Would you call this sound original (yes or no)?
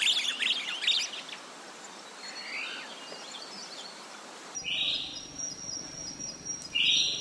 yes